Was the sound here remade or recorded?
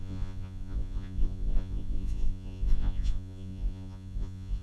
remade